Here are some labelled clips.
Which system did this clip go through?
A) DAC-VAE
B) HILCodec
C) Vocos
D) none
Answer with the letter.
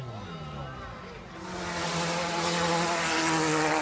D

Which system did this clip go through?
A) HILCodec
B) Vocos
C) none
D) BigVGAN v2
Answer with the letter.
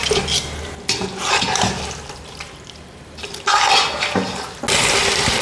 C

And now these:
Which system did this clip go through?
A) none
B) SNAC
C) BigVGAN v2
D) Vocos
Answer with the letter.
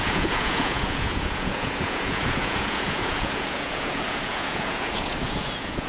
D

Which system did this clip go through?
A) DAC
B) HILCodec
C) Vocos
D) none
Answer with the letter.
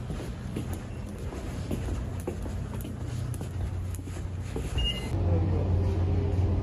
D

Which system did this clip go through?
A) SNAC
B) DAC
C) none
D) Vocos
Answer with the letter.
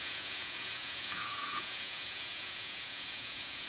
D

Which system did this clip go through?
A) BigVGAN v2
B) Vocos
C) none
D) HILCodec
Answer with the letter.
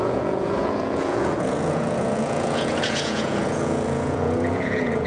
B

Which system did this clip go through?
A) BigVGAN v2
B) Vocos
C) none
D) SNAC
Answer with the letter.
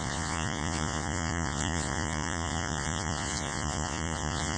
B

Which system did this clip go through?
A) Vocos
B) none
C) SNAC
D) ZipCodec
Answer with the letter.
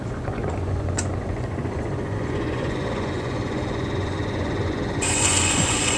A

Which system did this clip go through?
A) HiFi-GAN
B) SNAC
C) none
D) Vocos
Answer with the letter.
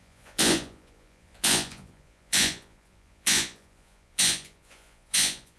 D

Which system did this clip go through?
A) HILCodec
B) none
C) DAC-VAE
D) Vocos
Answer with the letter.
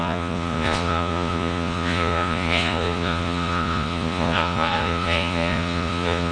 D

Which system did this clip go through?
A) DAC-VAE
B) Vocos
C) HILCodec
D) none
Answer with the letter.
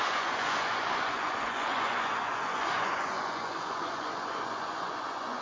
B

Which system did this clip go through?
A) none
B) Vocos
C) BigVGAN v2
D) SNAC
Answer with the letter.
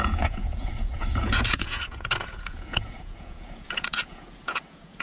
B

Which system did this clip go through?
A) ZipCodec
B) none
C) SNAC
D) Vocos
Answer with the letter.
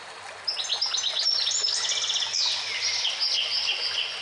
B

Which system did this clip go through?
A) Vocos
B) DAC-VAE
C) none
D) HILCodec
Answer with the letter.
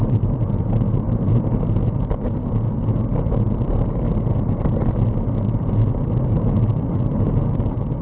C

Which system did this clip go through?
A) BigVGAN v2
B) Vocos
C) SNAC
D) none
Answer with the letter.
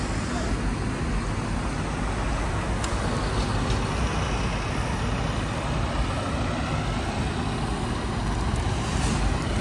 D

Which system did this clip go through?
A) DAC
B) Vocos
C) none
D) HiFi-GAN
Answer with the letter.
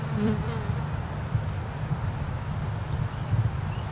C